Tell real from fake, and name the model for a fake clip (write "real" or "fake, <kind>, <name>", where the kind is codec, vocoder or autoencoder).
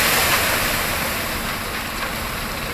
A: real